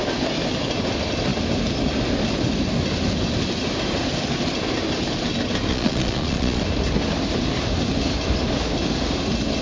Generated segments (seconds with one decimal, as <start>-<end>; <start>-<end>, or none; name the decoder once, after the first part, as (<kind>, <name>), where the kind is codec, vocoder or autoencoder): 5.7-6.6 (vocoder, Vocos)